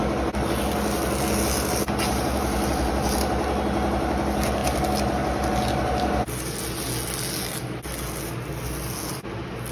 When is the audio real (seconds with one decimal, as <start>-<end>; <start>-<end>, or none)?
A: 0.0-9.7